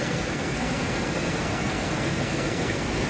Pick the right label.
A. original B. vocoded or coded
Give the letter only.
B